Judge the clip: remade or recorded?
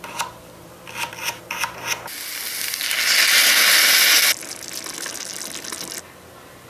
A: recorded